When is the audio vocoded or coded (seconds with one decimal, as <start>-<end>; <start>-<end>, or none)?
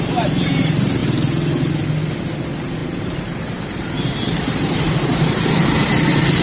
0.0-1.0; 2.3-6.4